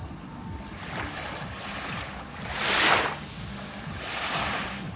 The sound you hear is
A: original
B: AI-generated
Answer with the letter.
A